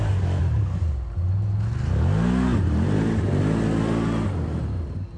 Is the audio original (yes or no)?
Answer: yes